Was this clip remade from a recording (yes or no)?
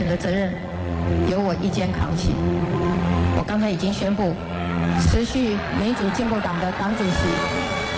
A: yes